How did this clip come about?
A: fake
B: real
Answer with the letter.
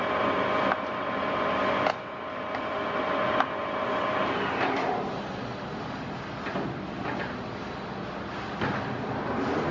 B